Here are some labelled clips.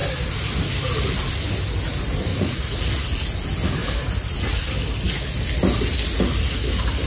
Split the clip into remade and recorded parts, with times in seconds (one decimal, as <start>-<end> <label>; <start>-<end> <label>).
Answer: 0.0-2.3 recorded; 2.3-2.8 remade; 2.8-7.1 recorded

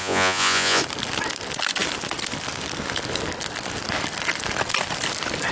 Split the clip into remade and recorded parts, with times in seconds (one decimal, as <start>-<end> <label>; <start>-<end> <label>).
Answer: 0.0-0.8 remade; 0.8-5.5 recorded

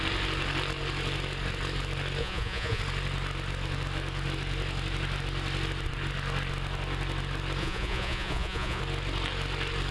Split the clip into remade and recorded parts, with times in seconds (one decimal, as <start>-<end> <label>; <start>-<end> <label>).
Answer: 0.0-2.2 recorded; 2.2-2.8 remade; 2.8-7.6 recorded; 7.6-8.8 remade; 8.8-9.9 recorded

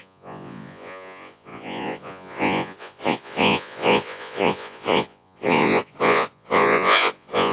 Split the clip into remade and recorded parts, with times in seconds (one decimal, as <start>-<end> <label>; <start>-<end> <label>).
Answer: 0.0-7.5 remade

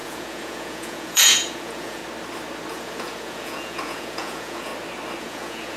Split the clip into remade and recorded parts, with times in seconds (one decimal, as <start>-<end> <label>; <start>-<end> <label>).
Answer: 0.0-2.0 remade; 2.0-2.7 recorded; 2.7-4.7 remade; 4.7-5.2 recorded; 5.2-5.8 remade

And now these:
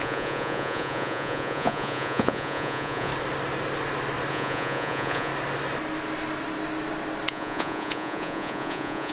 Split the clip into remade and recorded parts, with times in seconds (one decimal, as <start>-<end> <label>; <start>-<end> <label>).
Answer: 0.0-3.1 remade; 3.1-4.3 recorded; 4.3-5.3 remade; 5.3-7.3 recorded; 7.3-9.1 remade

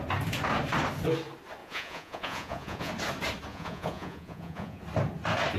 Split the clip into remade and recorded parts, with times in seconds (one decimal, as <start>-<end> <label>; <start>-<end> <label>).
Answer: 0.0-1.6 recorded; 1.6-2.9 remade; 2.9-3.5 recorded; 3.5-4.8 remade; 4.8-5.6 recorded